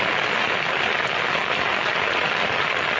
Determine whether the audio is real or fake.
real